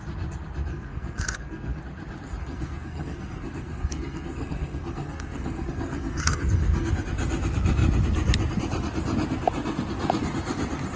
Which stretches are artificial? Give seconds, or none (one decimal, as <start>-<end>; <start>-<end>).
0.7-1.8; 2.4-6.9

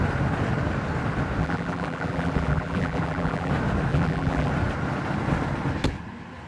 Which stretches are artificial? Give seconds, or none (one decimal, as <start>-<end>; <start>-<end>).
1.4-3.5; 3.9-4.5